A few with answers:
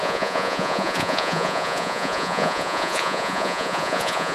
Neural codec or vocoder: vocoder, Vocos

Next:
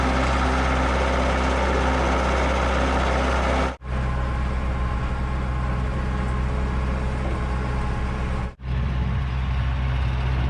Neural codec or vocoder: none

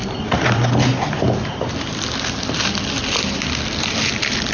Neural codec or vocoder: none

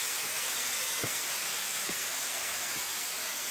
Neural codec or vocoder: codec, SNAC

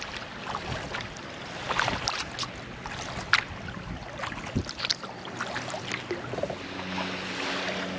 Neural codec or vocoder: none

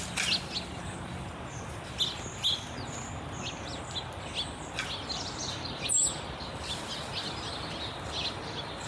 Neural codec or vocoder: none